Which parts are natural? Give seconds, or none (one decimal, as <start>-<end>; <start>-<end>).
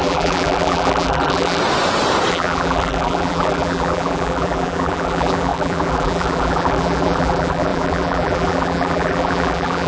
1.6-2.3